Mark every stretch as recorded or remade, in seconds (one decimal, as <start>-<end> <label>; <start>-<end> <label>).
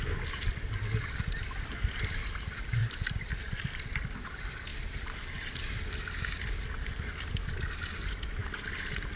0.0-2.8 recorded; 2.8-3.9 remade; 3.9-4.7 recorded; 4.7-5.5 remade; 5.5-9.2 recorded